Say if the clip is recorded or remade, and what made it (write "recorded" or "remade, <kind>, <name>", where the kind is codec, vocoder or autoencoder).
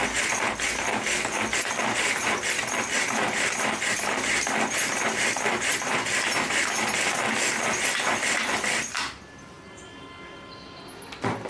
recorded